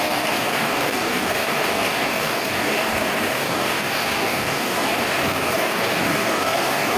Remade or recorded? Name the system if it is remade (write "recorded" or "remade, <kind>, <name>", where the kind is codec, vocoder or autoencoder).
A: remade, codec, DAC